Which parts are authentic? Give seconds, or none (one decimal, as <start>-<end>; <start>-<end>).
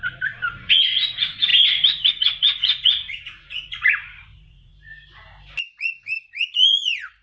1.5-2.1; 4.7-5.8